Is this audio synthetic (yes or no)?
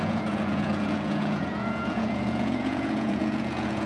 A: yes